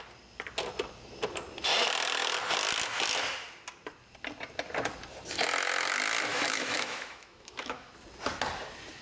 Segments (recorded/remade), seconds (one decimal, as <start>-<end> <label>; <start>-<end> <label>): 0.0-6.3 recorded; 6.3-7.9 remade; 7.9-9.0 recorded